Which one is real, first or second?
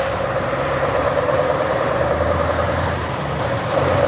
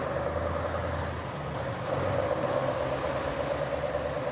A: second